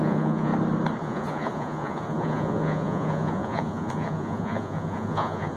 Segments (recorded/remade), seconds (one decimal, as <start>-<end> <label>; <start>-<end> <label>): 0.0-0.5 remade; 0.5-1.0 recorded; 1.0-5.6 remade